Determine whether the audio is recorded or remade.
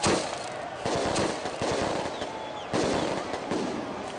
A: recorded